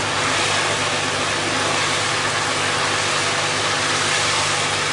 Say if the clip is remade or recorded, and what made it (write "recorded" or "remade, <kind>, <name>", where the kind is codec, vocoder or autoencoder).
recorded